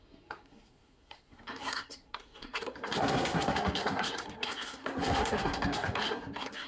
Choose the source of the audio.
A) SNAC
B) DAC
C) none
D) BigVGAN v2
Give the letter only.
A